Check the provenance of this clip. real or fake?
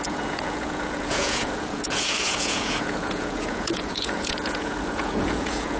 fake